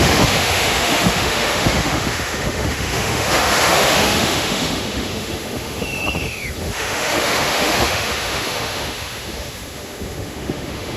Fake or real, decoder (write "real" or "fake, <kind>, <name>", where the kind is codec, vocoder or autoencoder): fake, autoencoder, DAC-VAE